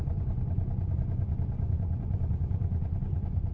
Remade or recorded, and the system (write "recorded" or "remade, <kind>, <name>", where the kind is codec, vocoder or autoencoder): remade, vocoder, Vocos